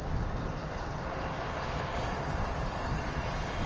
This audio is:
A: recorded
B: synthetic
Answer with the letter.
A